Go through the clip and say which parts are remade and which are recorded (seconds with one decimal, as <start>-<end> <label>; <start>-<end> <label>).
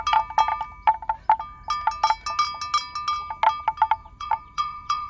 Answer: 0.0-4.0 recorded; 4.0-5.1 remade